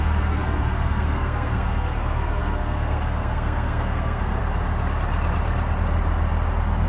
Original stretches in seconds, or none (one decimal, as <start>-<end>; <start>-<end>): 4.4-6.9